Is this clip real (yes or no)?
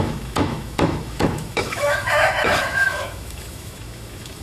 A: no